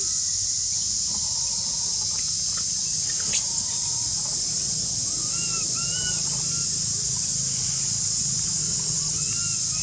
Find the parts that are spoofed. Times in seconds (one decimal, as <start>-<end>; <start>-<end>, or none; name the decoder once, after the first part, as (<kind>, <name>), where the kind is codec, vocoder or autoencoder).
8.6-9.3 (vocoder, HiFi-GAN)